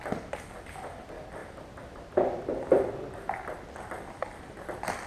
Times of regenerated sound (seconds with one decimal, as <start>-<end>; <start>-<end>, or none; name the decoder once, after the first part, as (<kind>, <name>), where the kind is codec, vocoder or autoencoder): none